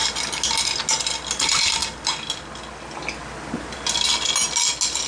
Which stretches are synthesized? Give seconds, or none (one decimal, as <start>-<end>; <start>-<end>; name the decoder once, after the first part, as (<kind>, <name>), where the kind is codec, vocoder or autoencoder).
none

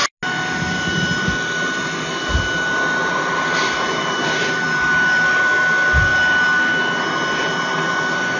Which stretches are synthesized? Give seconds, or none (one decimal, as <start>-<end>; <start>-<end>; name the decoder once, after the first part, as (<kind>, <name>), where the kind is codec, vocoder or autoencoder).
none

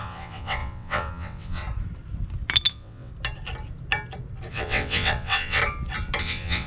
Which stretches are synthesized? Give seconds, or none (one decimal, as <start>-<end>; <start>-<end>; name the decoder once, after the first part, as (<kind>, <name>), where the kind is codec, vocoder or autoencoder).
0.0-1.6 (vocoder, WaveNeXt); 2.7-3.1; 4.5-5.6; 6.2-6.7